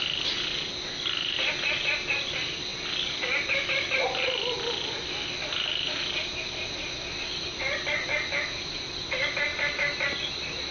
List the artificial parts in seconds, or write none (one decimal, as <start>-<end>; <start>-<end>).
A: none